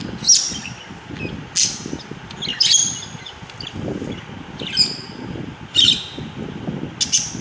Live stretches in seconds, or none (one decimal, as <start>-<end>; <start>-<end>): 0.0-7.4